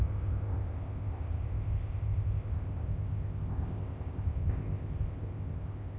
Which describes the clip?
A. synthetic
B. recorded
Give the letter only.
A